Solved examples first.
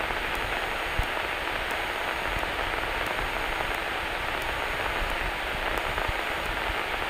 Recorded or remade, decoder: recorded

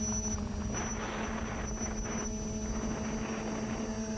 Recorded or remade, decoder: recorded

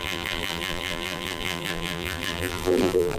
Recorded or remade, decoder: remade, vocoder, BigVGAN v2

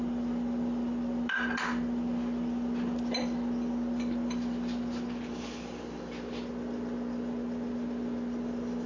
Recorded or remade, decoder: recorded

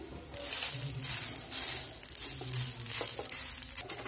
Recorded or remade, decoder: recorded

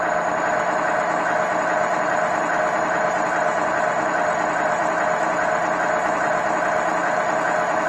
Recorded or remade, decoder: remade, vocoder, BigVGAN v2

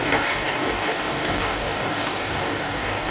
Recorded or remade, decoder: remade, codec, DAC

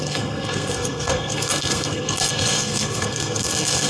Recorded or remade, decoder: remade, codec, SNAC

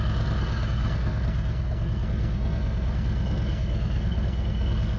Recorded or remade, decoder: remade, codec, SNAC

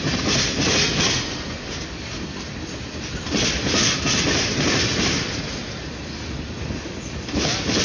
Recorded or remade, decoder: recorded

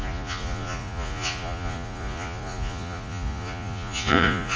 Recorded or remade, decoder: remade, vocoder, Vocos